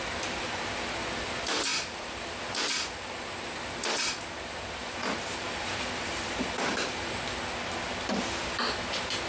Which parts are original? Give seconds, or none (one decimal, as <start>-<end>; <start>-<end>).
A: 0.0-1.7; 2.4-4.8; 7.2-9.3